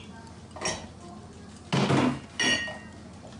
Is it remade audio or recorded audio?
recorded